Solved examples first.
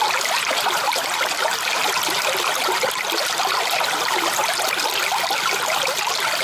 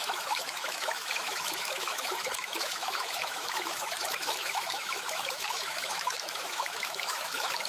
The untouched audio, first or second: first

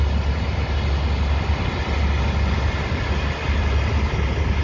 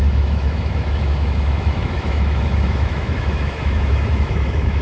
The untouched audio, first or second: first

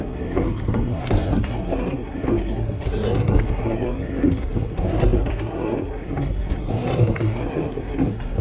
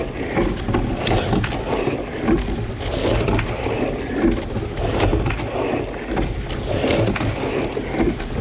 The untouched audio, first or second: second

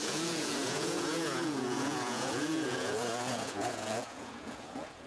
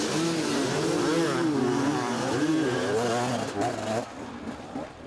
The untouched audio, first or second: second